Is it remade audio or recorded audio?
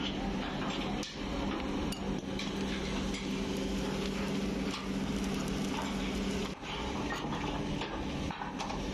recorded